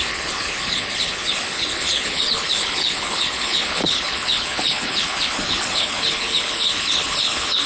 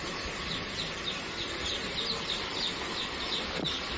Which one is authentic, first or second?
second